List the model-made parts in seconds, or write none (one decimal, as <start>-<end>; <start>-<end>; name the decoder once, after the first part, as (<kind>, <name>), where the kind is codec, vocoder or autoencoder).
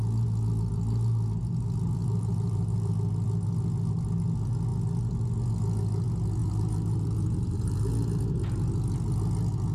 2.0-2.9 (vocoder, BigVGAN v2); 6.4-7.9